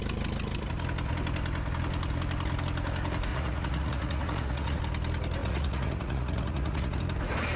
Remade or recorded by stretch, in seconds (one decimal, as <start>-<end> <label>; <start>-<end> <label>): 0.0-3.3 recorded; 3.3-4.8 remade; 4.8-5.4 recorded; 5.4-7.0 remade; 7.0-7.6 recorded